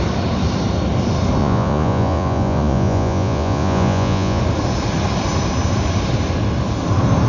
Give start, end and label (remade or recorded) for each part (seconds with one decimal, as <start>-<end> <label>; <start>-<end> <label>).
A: 0.0-1.4 recorded; 1.4-4.4 remade; 4.4-7.3 recorded